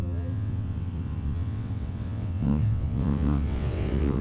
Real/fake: fake